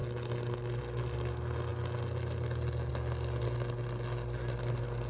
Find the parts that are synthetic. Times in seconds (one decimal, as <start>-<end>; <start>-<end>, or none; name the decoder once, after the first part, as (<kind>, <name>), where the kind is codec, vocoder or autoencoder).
none